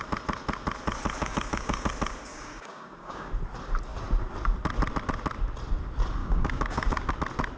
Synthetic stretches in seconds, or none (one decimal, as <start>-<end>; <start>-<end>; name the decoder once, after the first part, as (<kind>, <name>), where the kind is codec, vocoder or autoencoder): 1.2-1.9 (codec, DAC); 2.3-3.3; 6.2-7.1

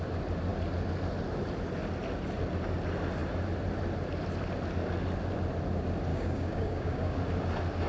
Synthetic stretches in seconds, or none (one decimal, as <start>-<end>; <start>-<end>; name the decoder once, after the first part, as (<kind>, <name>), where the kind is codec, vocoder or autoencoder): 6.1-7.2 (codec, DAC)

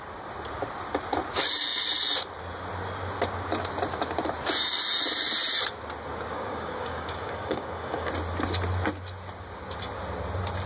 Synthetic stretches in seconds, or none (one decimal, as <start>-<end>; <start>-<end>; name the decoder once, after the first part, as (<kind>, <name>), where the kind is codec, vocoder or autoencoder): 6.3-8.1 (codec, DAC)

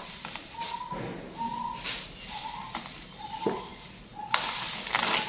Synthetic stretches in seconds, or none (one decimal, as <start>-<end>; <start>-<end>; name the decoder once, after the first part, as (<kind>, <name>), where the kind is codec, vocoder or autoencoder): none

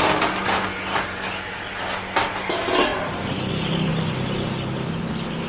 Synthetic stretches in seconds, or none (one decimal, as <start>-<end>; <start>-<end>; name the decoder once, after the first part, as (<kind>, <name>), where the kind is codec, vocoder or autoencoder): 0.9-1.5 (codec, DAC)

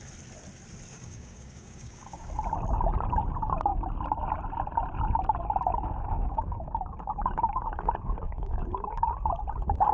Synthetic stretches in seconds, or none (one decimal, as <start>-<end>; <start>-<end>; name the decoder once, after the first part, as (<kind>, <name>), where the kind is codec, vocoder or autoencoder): 0.9-2.3 (codec, DAC); 5.7-9.1

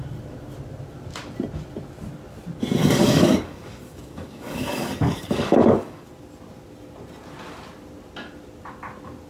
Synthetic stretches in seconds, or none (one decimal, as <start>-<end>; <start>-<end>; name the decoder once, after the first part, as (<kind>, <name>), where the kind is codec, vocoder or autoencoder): 2.8-6.1 (codec, DAC)